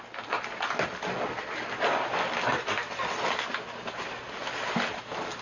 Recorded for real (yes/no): yes